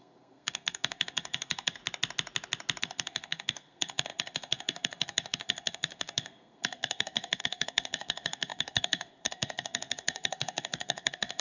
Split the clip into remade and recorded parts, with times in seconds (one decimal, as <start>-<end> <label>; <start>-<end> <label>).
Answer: 0.0-1.8 remade; 1.8-2.8 recorded; 2.8-11.4 remade

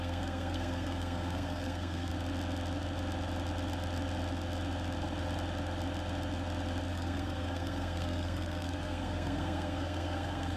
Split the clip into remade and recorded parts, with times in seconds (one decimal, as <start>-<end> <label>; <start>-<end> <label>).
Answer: 0.0-2.1 remade; 2.1-6.9 recorded; 6.9-10.6 remade

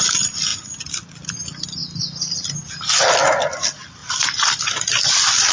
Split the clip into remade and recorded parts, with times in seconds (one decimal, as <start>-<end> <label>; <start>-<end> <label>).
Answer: 0.0-5.5 recorded

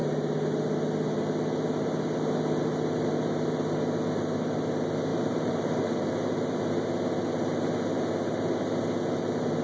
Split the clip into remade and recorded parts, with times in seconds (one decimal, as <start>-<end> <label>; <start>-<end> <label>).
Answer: 0.0-5.1 recorded; 5.1-5.8 remade; 5.8-9.6 recorded